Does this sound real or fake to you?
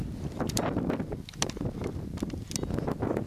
real